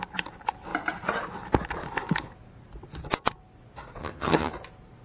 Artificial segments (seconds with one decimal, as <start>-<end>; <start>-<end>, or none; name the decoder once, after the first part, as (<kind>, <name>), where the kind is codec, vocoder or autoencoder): 4.0-4.5 (vocoder, HiFi-GAN)